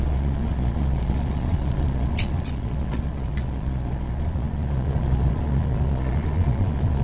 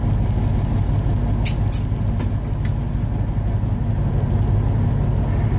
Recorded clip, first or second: second